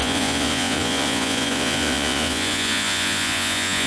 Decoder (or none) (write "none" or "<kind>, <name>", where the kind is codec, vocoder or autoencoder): vocoder, Vocos